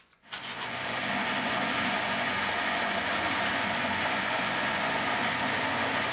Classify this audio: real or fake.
fake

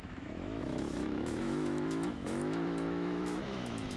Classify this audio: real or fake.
fake